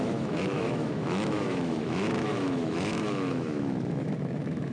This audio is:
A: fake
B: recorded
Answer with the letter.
A